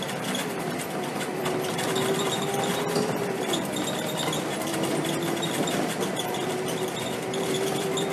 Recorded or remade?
remade